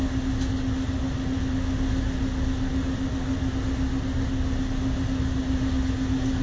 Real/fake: real